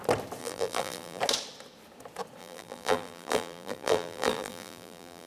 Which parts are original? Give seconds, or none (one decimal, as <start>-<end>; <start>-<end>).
0.0-0.4; 1.2-2.4